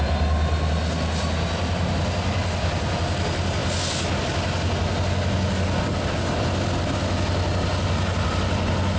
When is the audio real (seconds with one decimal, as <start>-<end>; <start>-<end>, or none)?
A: 0.0-9.0